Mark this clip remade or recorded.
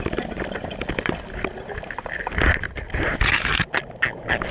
recorded